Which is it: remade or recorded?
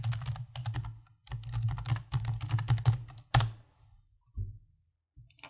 recorded